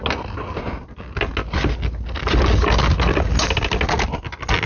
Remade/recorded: recorded